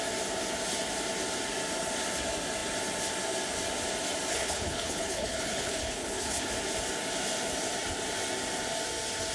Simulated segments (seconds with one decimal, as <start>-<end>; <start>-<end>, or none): 4.3-6.5